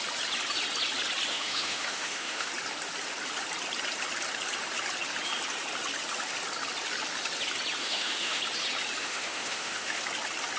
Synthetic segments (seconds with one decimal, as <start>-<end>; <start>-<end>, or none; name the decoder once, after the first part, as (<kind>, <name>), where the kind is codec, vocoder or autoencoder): 1.3-2.5 (autoencoder, DAC-VAE); 7.8-8.4; 9.0-10.0